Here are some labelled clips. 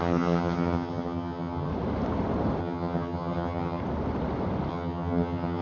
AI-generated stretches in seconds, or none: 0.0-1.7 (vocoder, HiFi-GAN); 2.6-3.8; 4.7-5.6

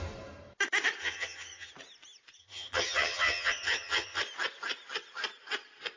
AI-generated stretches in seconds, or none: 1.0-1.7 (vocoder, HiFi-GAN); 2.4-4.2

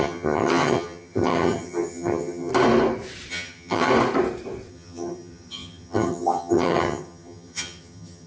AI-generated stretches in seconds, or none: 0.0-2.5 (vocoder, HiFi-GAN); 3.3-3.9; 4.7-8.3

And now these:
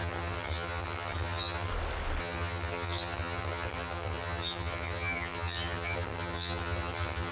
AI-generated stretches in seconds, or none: 0.0-1.7 (vocoder, HiFi-GAN); 2.2-7.3

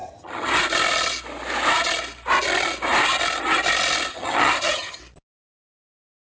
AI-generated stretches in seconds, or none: 0.0-0.5 (vocoder, HiFi-GAN); 4.1-5.0

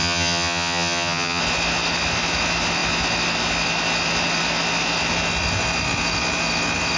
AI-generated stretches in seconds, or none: 0.0-1.4 (vocoder, HiFi-GAN)

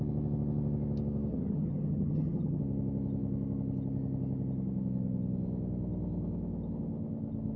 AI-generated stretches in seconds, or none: 1.3-2.6 (vocoder, HiFi-GAN)